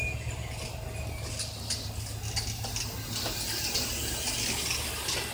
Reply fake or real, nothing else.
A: real